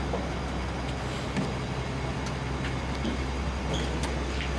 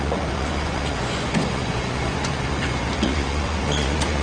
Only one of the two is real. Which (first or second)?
first